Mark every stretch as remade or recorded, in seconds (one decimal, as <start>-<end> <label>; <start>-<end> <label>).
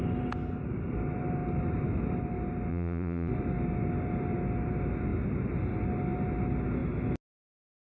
0.0-2.7 recorded; 2.7-3.3 remade; 3.3-7.8 recorded